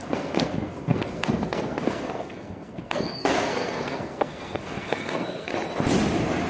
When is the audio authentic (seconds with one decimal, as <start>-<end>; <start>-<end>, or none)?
5.5-6.5